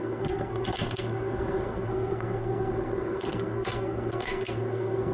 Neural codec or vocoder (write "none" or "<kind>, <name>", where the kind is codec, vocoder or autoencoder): codec, SNAC